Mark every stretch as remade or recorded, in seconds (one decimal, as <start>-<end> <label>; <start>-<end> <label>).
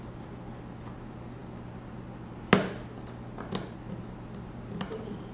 0.0-5.3 recorded